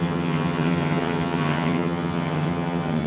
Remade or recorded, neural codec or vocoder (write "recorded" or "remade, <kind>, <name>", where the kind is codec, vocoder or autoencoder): remade, vocoder, HiFi-GAN